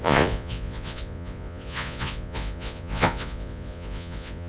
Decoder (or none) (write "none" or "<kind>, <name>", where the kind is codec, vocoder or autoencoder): vocoder, Vocos